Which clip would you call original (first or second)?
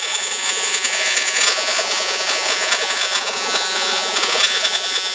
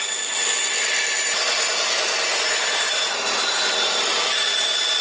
second